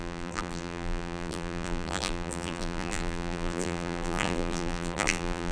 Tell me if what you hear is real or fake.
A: fake